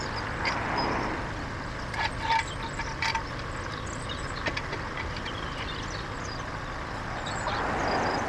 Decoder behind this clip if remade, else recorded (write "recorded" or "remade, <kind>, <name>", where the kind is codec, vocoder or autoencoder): recorded